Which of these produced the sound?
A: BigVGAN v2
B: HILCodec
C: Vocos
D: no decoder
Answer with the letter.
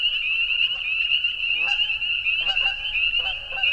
D